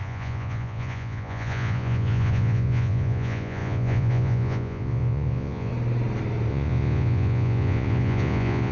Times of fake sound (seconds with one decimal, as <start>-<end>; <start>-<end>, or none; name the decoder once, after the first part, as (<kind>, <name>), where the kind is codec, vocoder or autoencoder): 0.0-5.7 (vocoder, Vocos); 6.5-8.7

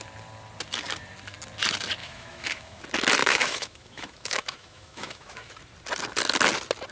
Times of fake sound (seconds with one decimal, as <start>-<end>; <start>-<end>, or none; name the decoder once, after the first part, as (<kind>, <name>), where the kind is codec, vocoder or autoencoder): 2.0-2.8 (autoencoder, DAC-VAE); 3.2-5.5